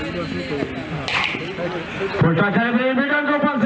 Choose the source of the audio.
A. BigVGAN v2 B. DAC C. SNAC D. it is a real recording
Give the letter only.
D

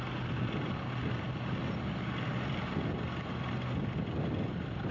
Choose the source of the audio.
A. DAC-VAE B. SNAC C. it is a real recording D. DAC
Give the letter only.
C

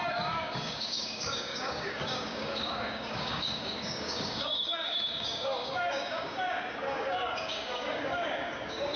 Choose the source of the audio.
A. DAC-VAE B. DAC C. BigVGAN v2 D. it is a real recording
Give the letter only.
B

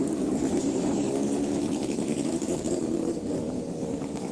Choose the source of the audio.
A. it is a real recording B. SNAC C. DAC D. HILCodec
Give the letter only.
C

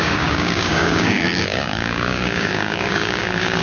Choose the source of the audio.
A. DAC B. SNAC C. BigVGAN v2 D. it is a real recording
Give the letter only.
A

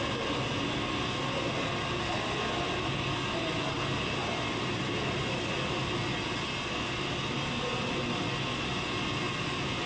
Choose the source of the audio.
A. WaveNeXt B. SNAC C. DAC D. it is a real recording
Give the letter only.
D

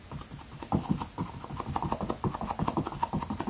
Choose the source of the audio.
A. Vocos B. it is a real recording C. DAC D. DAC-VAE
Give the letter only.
B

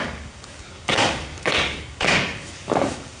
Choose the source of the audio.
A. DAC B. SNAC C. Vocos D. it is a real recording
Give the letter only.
A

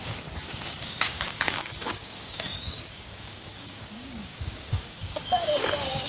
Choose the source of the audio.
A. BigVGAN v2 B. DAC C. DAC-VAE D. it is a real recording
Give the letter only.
B